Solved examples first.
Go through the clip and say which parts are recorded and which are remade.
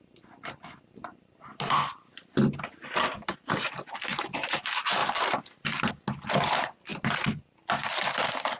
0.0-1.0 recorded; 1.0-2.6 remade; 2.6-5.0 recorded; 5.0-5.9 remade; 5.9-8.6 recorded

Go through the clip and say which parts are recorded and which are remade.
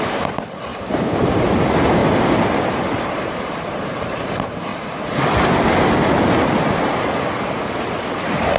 0.0-0.7 remade; 0.7-1.6 recorded; 1.6-2.0 remade; 2.0-2.5 recorded; 2.5-4.7 remade; 4.7-8.6 recorded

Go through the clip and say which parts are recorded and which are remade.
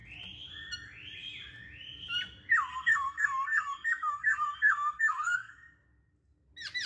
0.0-2.7 recorded; 2.7-5.5 remade; 5.5-6.9 recorded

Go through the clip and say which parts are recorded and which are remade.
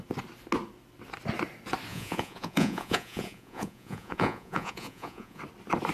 0.0-1.9 recorded; 1.9-5.4 remade; 5.4-5.9 recorded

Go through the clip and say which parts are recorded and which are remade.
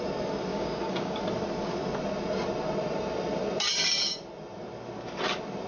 0.0-0.5 recorded; 0.5-1.2 remade; 1.2-5.7 recorded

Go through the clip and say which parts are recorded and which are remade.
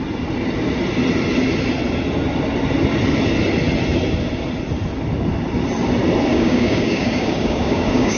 0.0-6.3 recorded; 6.3-8.2 remade